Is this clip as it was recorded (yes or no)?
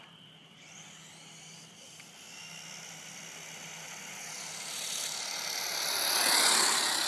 yes